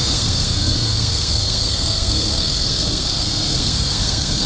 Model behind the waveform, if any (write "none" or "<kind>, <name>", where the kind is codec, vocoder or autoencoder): codec, SNAC